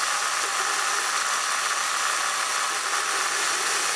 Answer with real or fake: real